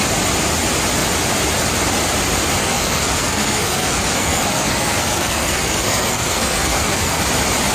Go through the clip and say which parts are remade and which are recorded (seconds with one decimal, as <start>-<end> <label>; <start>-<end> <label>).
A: 0.0-2.6 recorded; 2.6-7.2 remade; 7.2-7.7 recorded